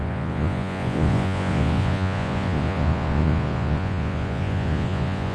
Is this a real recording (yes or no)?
no